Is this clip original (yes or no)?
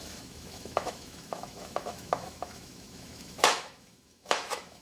no